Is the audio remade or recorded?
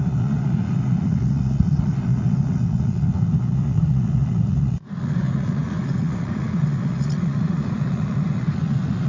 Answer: remade